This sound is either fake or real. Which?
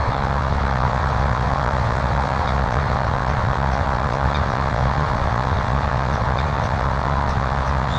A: fake